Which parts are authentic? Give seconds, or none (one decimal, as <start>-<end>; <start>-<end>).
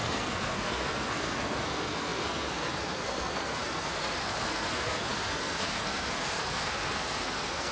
none